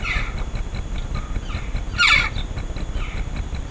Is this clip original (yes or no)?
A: yes